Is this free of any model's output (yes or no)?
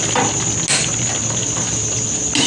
yes